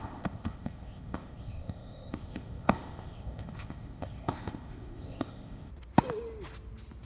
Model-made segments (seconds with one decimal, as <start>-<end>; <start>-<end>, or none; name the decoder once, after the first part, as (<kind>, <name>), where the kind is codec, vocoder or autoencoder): 0.0-5.7 (codec, ZipCodec)